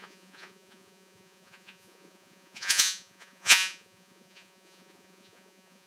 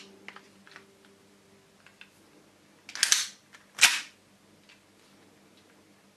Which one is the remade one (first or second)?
first